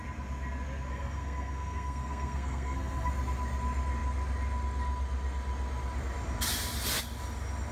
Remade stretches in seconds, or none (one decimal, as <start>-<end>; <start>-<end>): 0.9-3.1